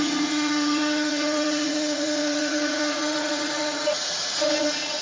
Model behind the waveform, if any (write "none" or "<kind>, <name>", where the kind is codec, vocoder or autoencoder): vocoder, Vocos